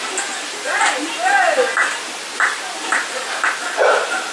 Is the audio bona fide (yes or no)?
yes